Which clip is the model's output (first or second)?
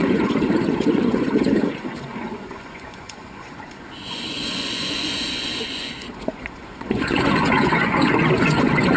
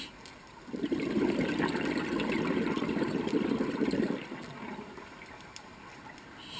first